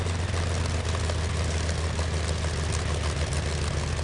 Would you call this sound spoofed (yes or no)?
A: no